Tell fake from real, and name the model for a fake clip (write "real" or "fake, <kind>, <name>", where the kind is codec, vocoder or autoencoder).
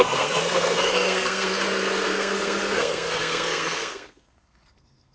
fake, codec, SNAC